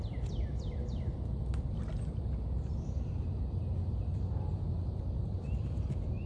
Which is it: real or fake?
real